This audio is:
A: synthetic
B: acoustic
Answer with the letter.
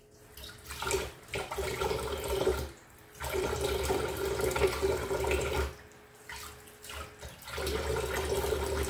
B